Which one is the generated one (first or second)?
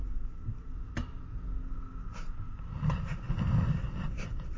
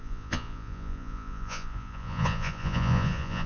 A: second